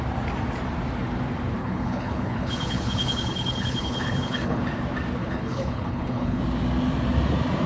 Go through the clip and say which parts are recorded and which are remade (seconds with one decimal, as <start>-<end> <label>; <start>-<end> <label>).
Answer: 0.0-1.6 recorded; 1.6-4.6 remade; 4.6-5.2 recorded; 5.2-6.4 remade; 6.4-7.7 recorded